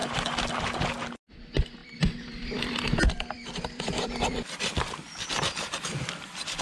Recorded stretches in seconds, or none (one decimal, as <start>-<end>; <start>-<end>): 0.8-1.8; 5.7-6.6